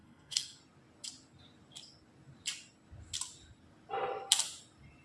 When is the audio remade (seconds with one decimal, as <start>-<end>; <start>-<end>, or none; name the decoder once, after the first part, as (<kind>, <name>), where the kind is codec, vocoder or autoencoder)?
0.0-0.6 (codec, SNAC)